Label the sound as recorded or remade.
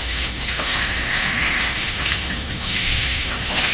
remade